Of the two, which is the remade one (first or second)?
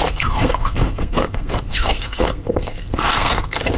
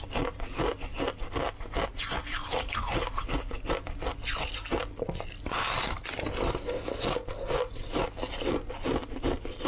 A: first